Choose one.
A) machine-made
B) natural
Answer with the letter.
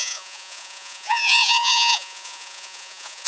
A